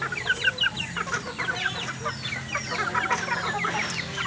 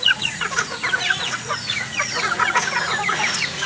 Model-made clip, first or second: second